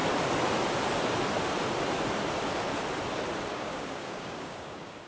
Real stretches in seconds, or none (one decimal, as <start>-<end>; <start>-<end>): 0.0-3.5